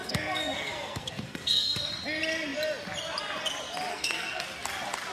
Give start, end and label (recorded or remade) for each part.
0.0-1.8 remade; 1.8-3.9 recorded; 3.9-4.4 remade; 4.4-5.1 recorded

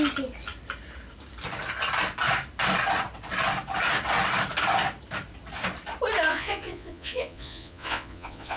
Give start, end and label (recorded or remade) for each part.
0.0-6.3 recorded; 6.3-8.6 remade

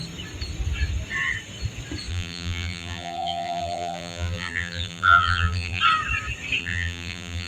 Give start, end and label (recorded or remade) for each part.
0.0-2.1 recorded; 2.1-5.8 remade; 5.8-6.6 recorded; 6.6-7.5 remade

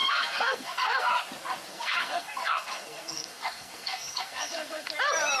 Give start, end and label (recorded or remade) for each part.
0.0-1.1 remade; 1.1-1.7 recorded; 1.7-4.9 remade; 4.9-5.4 recorded

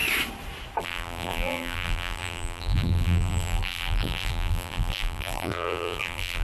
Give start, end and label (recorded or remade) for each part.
0.0-0.8 recorded; 0.8-6.4 remade

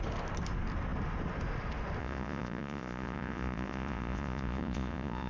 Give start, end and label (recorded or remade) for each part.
0.0-2.0 recorded; 2.0-5.3 remade